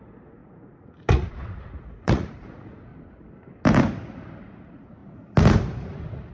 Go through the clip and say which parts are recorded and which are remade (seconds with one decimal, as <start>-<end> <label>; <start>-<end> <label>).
0.0-2.9 remade; 2.9-4.4 recorded; 4.4-5.0 remade; 5.0-6.3 recorded